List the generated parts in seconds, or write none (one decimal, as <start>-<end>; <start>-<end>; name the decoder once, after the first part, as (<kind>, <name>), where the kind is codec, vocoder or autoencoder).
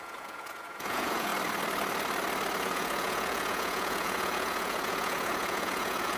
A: 0.0-1.3 (vocoder, Vocos); 2.6-6.2